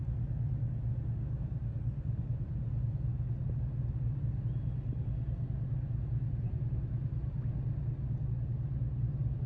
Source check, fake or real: real